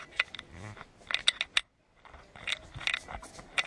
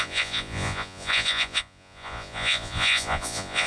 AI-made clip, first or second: second